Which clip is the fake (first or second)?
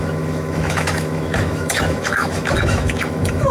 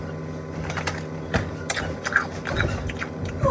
first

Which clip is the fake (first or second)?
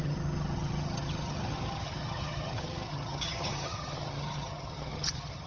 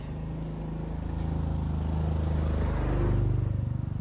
first